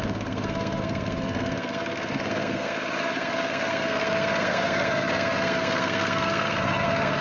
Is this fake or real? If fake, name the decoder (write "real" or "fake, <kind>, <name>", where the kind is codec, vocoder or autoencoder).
fake, codec, SNAC